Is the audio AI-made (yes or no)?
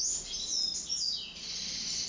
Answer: no